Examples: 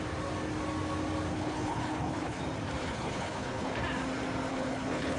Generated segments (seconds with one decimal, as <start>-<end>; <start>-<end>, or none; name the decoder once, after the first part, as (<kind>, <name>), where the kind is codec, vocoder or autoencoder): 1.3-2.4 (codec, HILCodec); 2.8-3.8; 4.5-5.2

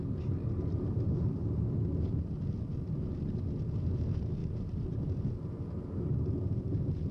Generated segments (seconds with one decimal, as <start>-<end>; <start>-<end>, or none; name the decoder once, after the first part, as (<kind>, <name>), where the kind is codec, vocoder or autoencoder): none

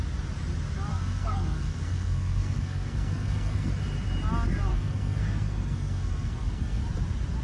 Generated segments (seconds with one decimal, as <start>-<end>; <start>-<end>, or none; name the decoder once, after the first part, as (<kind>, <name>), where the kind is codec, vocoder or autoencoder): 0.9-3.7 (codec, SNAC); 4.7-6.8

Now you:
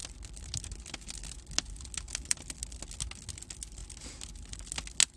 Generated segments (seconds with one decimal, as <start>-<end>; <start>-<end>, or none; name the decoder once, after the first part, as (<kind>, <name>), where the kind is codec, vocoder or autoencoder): none